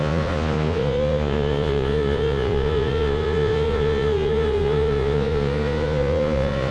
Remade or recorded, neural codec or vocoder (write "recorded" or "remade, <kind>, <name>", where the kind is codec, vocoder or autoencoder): remade, vocoder, Vocos